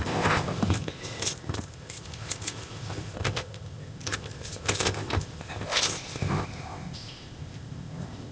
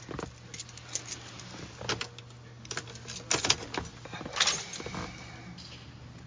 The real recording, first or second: second